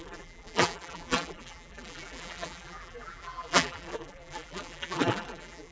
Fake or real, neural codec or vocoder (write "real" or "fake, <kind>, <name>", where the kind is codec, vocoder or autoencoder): fake, vocoder, BigVGAN v2